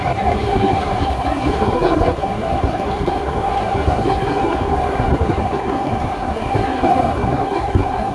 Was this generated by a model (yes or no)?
yes